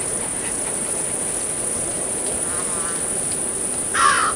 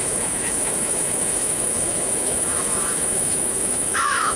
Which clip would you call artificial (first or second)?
second